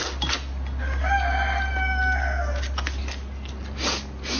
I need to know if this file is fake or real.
real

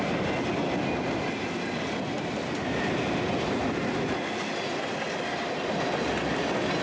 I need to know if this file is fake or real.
real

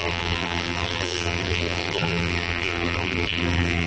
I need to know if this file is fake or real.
fake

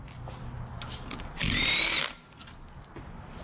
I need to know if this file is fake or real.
real